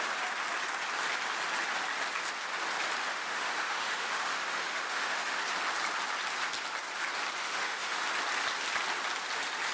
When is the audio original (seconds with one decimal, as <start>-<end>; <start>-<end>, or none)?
0.0-3.1; 5.4-7.4; 8.0-9.7